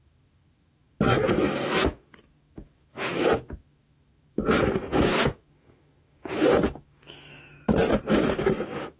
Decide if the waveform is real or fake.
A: fake